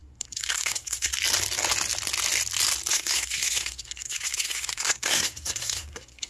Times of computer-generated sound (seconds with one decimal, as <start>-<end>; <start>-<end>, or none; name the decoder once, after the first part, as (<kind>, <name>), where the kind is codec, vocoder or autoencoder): 0.0-1.1 (codec, SNAC); 2.9-6.3